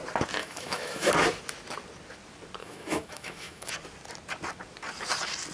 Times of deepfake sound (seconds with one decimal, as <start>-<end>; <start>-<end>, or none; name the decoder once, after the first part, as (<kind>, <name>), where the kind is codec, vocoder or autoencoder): 0.4-1.1 (autoencoder, DAC-VAE); 2.6-3.7